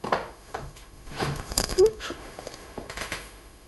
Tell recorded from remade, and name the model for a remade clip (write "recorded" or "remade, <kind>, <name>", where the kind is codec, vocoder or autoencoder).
remade, autoencoder, DAC-VAE